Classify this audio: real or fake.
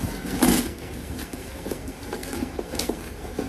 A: fake